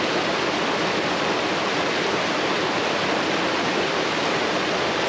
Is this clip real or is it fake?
real